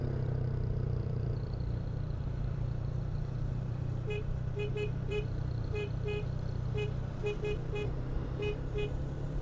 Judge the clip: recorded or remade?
remade